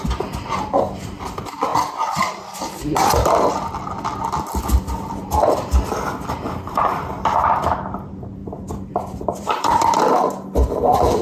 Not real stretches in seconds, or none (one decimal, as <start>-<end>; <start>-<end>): 8.4-10.0